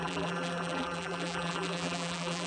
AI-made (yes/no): yes